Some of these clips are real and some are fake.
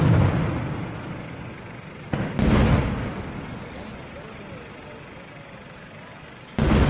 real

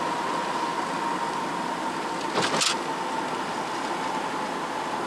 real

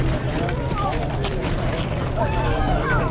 fake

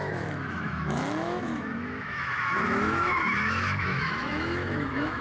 fake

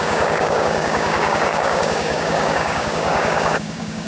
fake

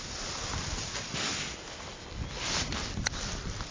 real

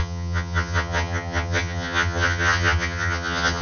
fake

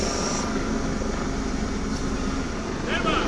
real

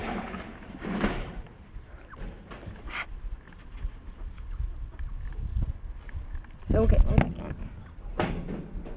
real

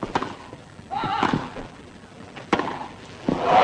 fake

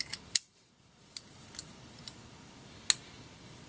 real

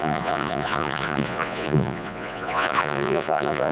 fake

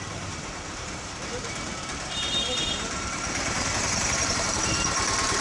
fake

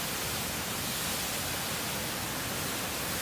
real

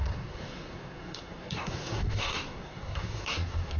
fake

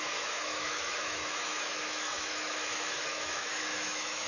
fake